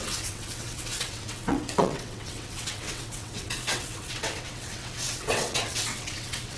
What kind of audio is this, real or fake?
fake